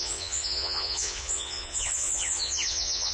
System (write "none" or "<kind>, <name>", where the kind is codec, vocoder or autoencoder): vocoder, Vocos